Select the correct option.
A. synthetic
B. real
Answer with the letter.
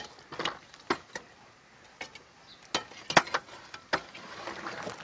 B